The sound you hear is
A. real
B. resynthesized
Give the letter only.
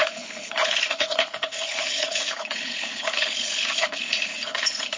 B